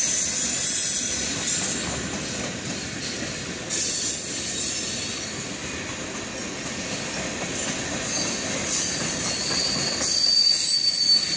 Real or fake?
real